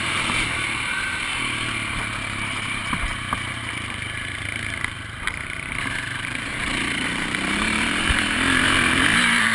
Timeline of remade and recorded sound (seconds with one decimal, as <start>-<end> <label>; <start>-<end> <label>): 0.0-2.8 remade; 2.8-3.6 recorded; 3.6-9.5 remade